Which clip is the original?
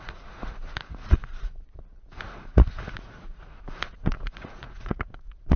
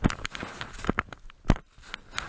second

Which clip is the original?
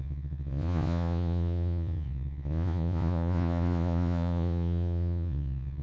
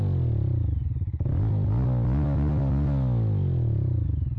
second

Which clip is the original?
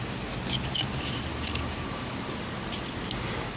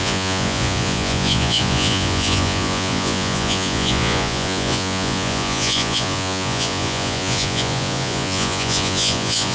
first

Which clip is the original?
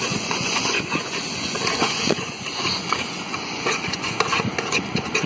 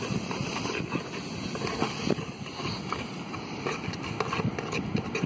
second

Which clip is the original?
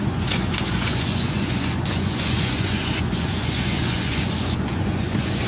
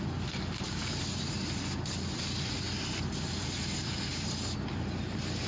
second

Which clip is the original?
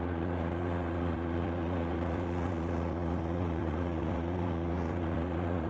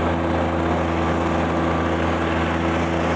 second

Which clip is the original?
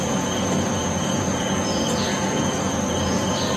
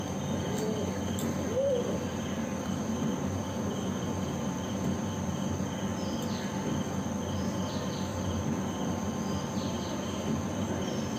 second